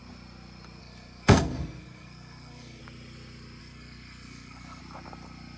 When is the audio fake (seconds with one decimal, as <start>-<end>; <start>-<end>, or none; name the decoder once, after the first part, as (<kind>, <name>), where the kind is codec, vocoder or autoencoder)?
0.8-2.8 (codec, SNAC); 3.6-4.8